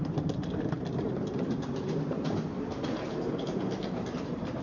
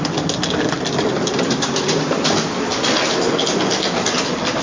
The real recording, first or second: second